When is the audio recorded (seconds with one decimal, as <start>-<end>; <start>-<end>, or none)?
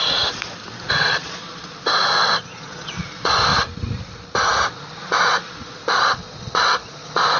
0.0-0.9; 3.5-5.0